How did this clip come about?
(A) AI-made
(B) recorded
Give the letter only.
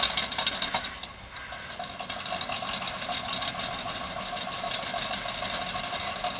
B